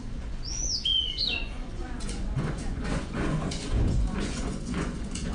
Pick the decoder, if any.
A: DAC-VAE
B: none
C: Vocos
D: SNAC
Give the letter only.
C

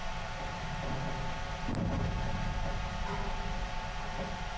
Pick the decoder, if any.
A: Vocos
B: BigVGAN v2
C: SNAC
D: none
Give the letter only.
D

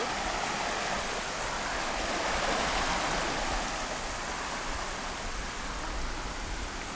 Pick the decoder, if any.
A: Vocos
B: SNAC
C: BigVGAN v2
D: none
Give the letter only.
D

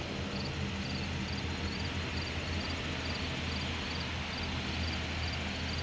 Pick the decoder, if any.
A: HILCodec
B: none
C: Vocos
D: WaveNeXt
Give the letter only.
B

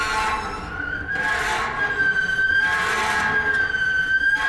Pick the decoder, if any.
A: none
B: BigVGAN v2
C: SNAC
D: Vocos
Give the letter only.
A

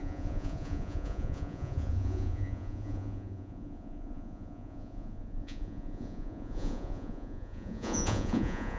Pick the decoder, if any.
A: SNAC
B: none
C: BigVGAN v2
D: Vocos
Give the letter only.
D